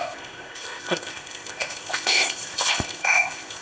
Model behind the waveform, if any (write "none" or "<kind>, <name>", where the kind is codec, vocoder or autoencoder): codec, ZipCodec